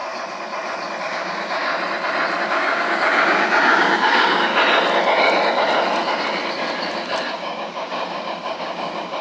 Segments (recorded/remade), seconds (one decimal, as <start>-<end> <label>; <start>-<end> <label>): 0.0-1.0 recorded; 1.0-1.7 remade; 1.7-2.4 recorded; 2.4-4.5 remade; 4.5-7.3 recorded; 7.3-9.2 remade